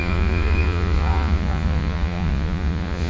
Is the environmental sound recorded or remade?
remade